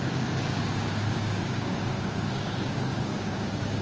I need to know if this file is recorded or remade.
remade